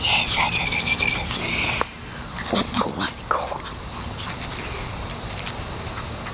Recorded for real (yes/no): yes